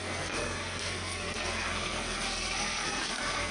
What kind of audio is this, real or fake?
fake